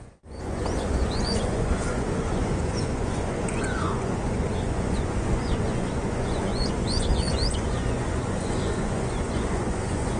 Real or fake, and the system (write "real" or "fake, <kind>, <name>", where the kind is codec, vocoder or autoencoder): fake, vocoder, Vocos